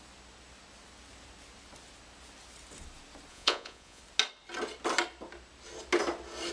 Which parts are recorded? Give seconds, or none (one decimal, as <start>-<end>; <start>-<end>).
0.0-3.3; 4.0-6.5